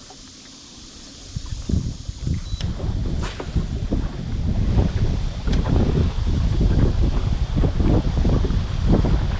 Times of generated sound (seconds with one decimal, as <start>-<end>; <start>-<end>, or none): none

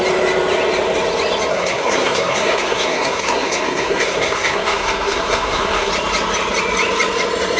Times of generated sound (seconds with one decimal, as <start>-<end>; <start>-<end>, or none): 1.5-5.9

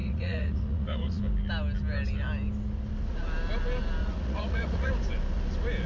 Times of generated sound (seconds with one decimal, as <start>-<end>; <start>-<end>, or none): 0.0-1.2; 4.0-4.9